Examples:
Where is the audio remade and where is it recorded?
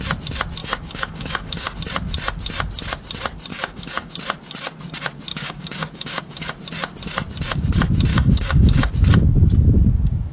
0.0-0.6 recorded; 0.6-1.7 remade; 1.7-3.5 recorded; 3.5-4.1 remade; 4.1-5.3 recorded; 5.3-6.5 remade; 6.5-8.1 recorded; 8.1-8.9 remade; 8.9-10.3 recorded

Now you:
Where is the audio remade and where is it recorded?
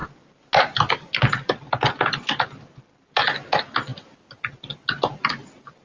0.0-5.8 recorded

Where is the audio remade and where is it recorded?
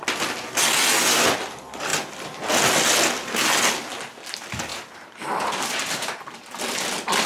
0.0-4.7 recorded; 4.7-6.2 remade; 6.2-7.3 recorded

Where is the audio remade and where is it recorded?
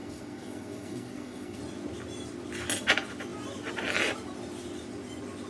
0.0-1.6 remade; 1.6-5.5 recorded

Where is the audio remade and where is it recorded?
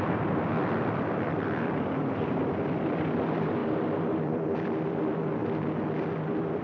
0.0-5.4 remade; 5.4-6.0 recorded; 6.0-6.6 remade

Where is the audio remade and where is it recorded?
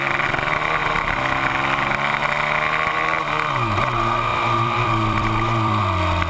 0.0-4.3 recorded; 4.3-5.8 remade; 5.8-6.3 recorded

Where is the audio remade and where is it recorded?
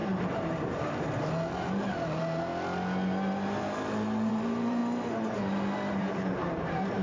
0.0-2.5 remade; 2.5-4.3 recorded; 4.3-4.8 remade; 4.8-5.9 recorded; 5.9-7.0 remade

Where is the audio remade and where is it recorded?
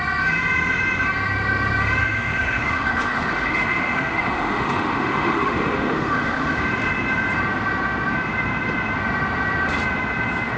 0.0-2.0 recorded; 2.0-6.6 remade; 6.6-10.6 recorded